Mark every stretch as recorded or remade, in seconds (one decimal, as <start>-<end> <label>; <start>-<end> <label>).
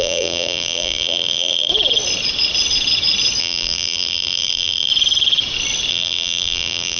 0.0-1.7 remade; 1.7-3.4 recorded; 3.4-4.9 remade; 4.9-5.9 recorded; 5.9-7.0 remade